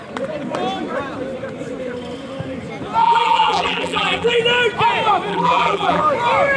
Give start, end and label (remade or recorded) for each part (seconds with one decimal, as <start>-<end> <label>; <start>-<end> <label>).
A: 0.0-3.0 recorded; 3.0-4.4 remade; 4.4-5.3 recorded; 5.3-6.0 remade; 6.0-6.6 recorded